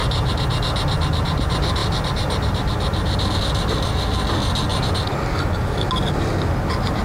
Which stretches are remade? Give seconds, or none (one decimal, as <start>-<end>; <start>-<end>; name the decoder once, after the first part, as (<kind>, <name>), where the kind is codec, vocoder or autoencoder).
none